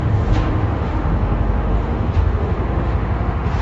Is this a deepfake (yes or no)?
yes